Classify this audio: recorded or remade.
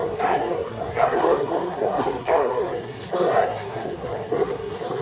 remade